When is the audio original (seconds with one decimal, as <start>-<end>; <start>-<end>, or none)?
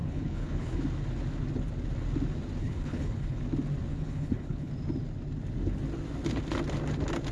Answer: 0.8-2.6; 3.4-3.9; 4.7-7.3